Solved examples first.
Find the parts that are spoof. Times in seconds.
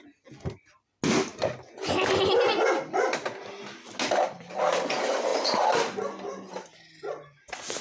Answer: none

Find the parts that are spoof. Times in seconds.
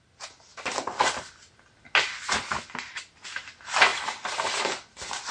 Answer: none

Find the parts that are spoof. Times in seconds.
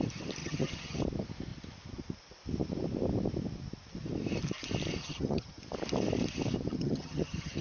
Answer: 0.4-1.0; 5.0-5.6; 6.7-7.6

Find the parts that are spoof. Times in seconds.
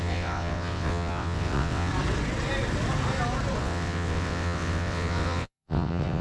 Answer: 0.0-1.9; 3.6-6.2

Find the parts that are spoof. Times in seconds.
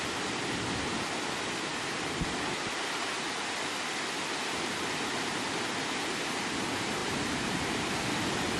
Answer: 7.0-7.8